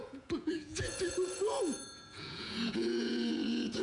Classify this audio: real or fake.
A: fake